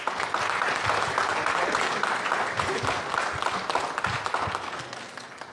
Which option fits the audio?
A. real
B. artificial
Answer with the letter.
A